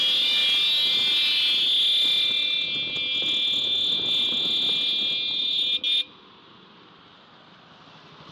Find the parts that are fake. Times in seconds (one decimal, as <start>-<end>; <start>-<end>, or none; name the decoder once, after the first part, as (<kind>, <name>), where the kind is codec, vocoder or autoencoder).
none